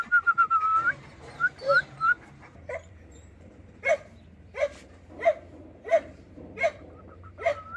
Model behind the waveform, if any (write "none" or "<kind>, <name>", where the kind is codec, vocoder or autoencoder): vocoder, BigVGAN v2